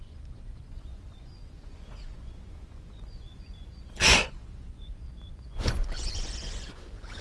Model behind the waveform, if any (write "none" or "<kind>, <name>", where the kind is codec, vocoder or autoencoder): vocoder, Vocos